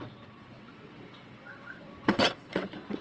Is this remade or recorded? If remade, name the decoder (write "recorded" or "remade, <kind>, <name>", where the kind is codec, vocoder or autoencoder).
remade, vocoder, WaveNeXt